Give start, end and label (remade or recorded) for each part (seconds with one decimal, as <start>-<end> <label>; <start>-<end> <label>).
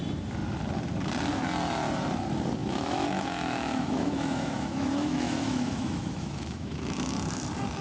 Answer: 0.0-2.6 recorded; 2.6-7.1 remade; 7.1-7.8 recorded